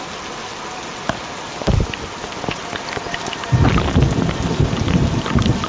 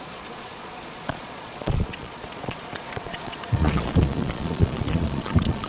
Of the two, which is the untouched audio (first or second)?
first